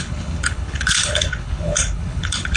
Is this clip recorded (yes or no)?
no